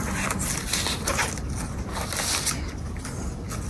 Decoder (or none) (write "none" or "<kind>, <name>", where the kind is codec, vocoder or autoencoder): none